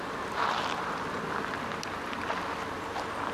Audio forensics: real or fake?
real